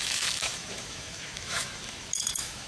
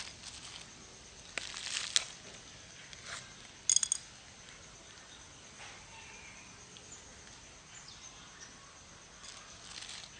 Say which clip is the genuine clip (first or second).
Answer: second